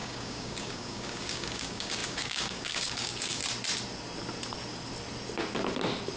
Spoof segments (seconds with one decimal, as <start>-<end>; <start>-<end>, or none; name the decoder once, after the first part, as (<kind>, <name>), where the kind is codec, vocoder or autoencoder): 0.0-3.4 (codec, DAC)